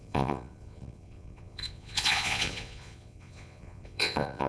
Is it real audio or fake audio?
fake